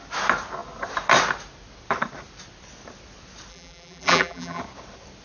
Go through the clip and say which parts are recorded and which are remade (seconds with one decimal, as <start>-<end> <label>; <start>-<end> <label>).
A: 0.0-3.5 recorded; 3.5-4.6 remade; 4.6-5.2 recorded